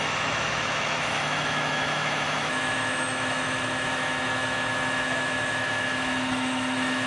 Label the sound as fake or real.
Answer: fake